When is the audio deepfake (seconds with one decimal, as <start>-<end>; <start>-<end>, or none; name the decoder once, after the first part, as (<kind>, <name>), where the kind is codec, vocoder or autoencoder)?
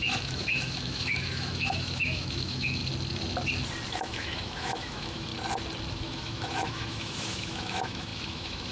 0.0-2.8 (autoencoder, DAC-VAE); 3.9-5.3; 5.9-8.7